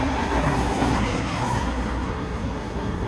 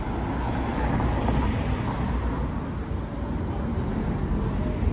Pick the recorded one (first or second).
second